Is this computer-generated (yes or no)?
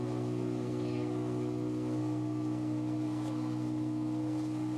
yes